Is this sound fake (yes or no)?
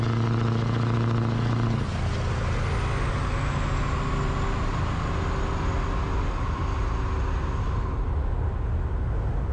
no